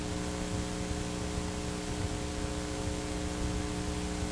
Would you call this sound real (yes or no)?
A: yes